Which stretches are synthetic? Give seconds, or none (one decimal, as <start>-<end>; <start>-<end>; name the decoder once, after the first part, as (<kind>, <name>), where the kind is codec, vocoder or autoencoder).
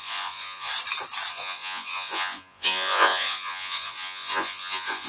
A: 0.0-0.7 (vocoder, Vocos); 1.3-5.1